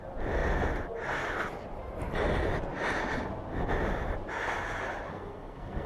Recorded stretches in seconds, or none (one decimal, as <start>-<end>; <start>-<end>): 0.0-5.1